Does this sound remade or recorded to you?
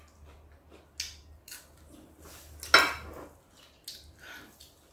recorded